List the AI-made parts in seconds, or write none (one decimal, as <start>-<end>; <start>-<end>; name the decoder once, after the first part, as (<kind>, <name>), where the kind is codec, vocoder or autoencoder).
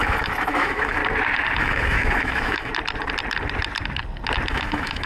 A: 0.0-1.0 (autoencoder, DAC-VAE); 1.6-2.7; 4.5-5.1